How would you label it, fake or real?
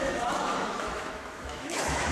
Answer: fake